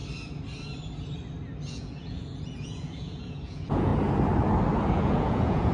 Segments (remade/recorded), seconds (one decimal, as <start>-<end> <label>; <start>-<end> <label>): 0.0-1.7 recorded; 1.7-3.9 remade; 3.9-4.9 recorded; 4.9-5.7 remade